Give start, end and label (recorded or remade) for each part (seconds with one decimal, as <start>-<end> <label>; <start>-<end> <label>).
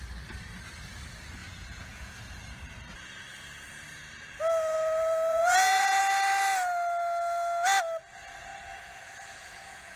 0.0-1.4 recorded; 1.4-2.2 remade; 2.2-5.3 recorded; 5.3-6.0 remade; 6.0-8.5 recorded; 8.5-10.0 remade